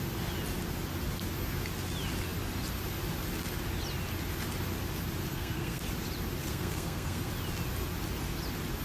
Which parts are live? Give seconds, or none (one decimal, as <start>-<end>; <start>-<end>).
0.0-5.3; 5.8-6.5; 7.3-8.8